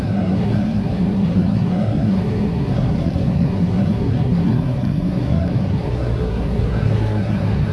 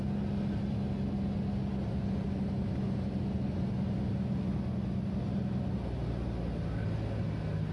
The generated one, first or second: first